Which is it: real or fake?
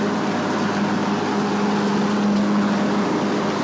real